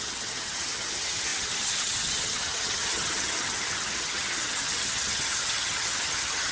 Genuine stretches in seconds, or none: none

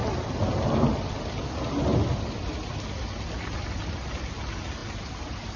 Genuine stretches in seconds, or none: 0.0-5.6

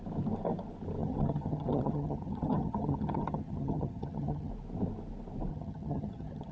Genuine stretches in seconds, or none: 0.0-1.0; 4.5-5.5

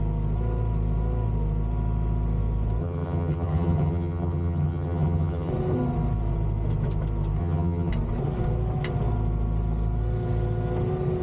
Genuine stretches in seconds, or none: 0.0-2.8; 5.5-7.4; 7.9-11.2

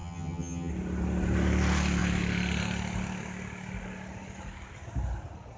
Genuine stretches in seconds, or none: 0.7-5.6